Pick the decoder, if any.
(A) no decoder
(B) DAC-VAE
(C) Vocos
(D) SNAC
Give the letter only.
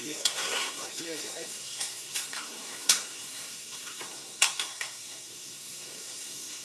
D